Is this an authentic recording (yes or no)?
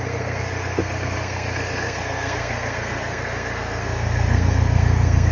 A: no